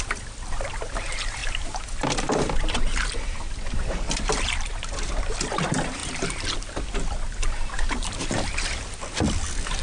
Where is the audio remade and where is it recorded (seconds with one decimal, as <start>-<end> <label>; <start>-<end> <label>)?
0.0-9.8 recorded